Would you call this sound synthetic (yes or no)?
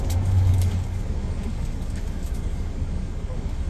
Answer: yes